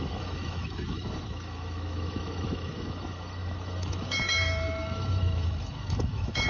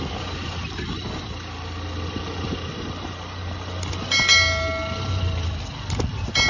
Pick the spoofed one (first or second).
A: first